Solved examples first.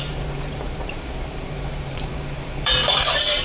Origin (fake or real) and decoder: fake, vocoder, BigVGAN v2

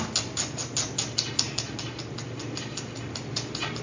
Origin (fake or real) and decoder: real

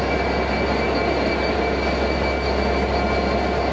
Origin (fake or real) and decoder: real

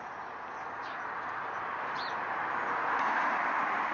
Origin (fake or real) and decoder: real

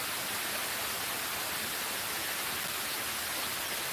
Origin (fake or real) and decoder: real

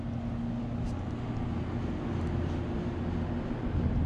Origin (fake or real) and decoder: real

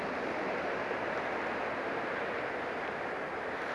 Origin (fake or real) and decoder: real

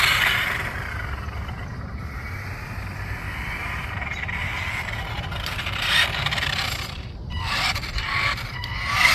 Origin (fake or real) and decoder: real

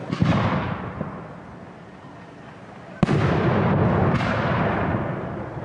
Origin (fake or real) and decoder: real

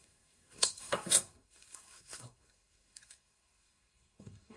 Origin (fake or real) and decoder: fake, codec, SNAC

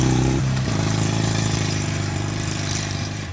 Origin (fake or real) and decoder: fake, vocoder, BigVGAN v2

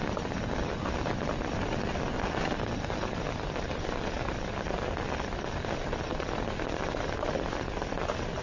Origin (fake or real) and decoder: real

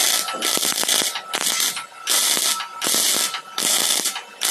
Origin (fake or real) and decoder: real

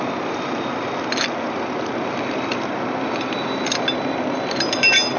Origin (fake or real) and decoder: real